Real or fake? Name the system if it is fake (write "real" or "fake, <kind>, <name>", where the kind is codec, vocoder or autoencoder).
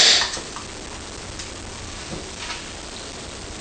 real